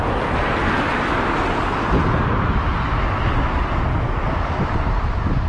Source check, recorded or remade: recorded